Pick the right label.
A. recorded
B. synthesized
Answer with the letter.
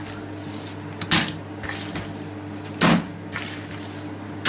A